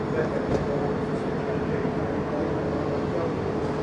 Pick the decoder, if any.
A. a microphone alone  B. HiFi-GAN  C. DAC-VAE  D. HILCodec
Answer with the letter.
A